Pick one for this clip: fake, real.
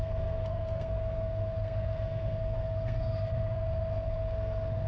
fake